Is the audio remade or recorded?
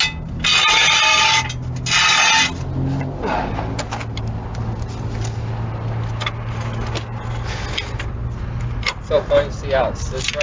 recorded